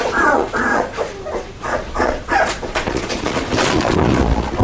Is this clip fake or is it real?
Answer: fake